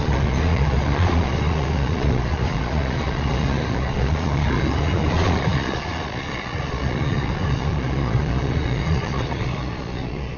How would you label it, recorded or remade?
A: remade